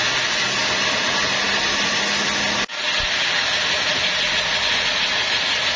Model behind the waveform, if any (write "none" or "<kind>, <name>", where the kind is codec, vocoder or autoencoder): none